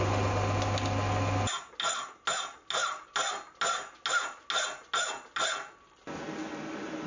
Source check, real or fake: real